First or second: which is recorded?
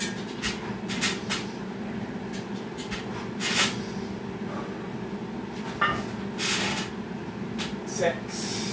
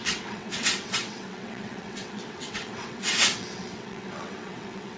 first